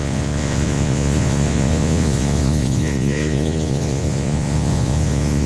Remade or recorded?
remade